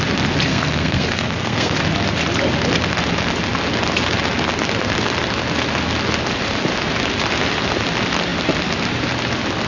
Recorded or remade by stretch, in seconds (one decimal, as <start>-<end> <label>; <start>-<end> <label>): 0.0-0.5 recorded; 0.5-1.7 remade; 1.7-9.7 recorded